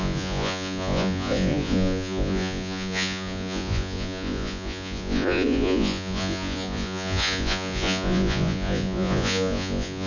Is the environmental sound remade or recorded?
remade